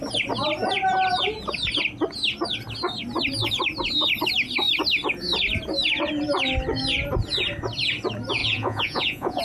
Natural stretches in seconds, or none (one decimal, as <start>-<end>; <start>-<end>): 0.0-8.4